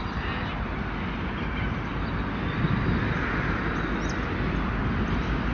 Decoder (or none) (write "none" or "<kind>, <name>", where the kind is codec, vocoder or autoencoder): none